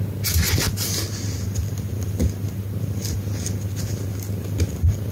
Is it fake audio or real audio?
real